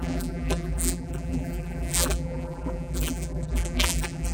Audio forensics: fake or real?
fake